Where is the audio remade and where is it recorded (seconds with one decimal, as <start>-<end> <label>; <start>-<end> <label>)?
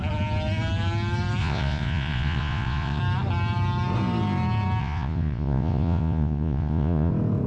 0.0-1.4 recorded; 1.4-3.0 remade; 3.0-4.8 recorded; 4.8-7.1 remade; 7.1-7.5 recorded